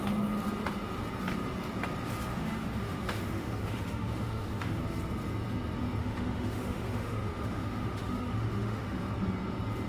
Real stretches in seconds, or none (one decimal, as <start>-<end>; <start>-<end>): 0.0-2.3; 4.8-6.0; 9.0-9.9